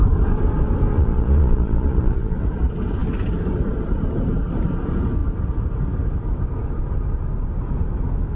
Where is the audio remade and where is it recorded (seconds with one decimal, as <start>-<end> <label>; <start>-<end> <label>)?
0.0-0.9 recorded; 0.9-2.4 remade; 2.4-8.3 recorded